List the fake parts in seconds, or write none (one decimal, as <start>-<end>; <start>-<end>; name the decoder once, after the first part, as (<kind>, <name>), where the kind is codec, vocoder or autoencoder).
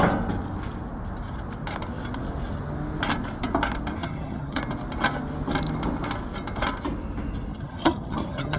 4.0-4.6 (vocoder, HiFi-GAN); 7.5-8.6